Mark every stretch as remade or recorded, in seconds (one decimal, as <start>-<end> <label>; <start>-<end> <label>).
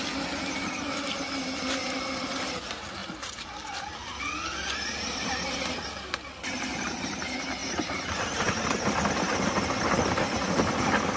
0.0-11.2 recorded